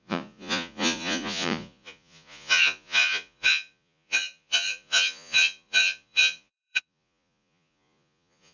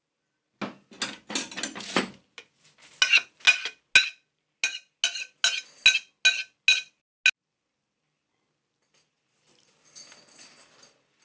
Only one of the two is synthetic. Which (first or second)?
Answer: first